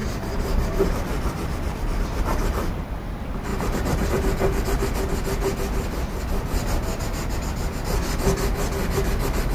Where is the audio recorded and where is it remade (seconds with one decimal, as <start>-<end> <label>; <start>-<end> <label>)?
0.0-2.9 remade; 2.9-3.5 recorded; 3.5-4.1 remade; 4.1-9.5 recorded